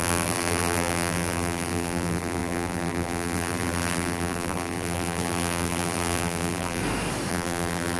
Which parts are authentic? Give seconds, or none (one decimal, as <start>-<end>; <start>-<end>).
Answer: 6.8-7.3